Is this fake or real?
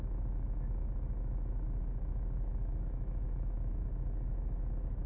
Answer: fake